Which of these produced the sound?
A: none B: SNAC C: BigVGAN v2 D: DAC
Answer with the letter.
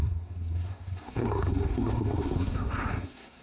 B